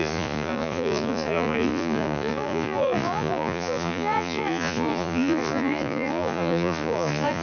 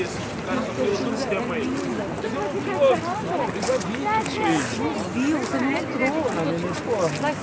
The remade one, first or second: first